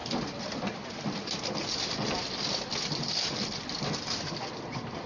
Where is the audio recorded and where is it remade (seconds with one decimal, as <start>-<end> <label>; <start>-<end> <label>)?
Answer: 0.0-5.1 recorded